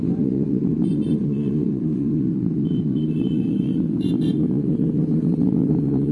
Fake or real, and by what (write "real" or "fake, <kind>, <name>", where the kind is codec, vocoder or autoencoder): fake, vocoder, Vocos